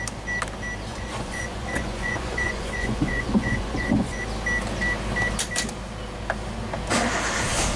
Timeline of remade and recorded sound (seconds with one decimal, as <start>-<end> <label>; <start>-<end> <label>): 0.0-0.9 recorded; 0.9-4.2 remade; 4.2-7.8 recorded